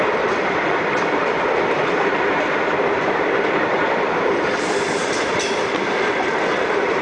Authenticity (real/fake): fake